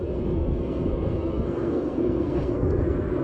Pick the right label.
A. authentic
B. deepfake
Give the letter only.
B